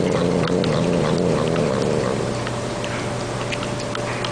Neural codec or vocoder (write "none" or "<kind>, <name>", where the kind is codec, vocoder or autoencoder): none